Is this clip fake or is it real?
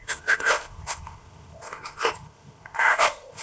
fake